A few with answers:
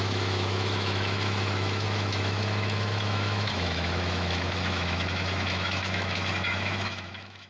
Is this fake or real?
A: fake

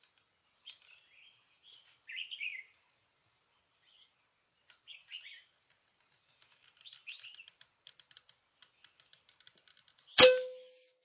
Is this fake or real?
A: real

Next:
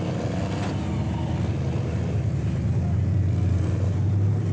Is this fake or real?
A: real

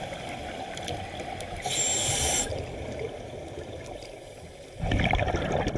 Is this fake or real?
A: fake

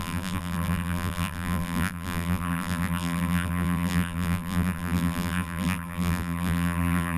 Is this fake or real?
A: fake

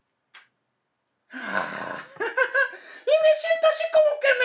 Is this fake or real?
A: real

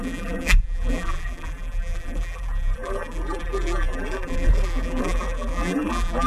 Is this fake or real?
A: fake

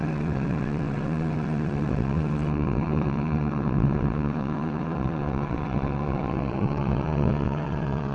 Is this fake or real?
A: fake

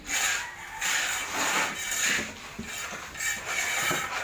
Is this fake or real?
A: real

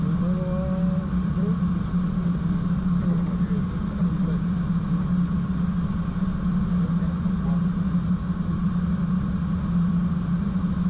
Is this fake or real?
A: real